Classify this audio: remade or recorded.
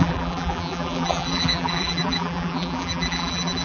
remade